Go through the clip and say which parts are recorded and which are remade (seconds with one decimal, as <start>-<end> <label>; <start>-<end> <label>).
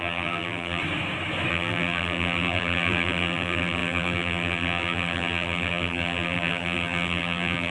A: 0.0-0.8 remade; 0.8-1.5 recorded; 1.5-7.7 remade